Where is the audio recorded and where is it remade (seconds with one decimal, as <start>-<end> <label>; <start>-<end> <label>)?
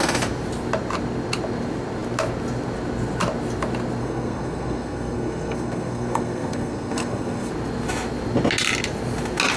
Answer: 0.0-4.0 recorded; 4.0-7.5 remade; 7.5-9.6 recorded